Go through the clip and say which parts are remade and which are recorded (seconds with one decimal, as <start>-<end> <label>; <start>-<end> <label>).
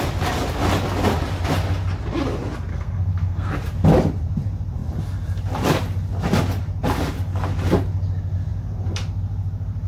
0.0-2.7 recorded; 2.7-3.5 remade; 3.5-9.9 recorded